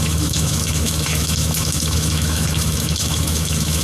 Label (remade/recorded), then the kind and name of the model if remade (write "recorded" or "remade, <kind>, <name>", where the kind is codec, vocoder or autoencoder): remade, autoencoder, DAC-VAE